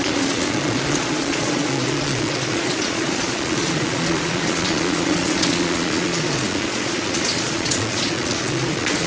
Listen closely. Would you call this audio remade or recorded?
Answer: remade